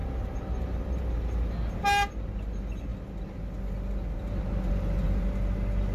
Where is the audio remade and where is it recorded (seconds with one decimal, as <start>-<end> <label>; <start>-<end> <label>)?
0.0-1.1 remade; 1.1-5.9 recorded